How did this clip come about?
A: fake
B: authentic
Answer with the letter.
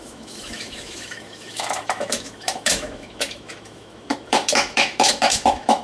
A